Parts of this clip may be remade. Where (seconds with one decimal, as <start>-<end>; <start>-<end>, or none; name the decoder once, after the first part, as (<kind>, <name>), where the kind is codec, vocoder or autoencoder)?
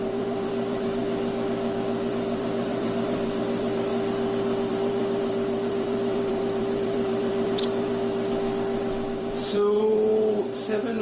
0.0-1.0 (vocoder, BigVGAN v2); 2.1-3.9; 4.7-7.9; 8.8-11.0